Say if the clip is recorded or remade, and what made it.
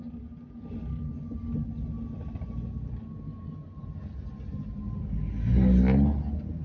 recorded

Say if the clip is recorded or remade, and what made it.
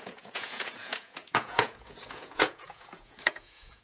remade, vocoder, Vocos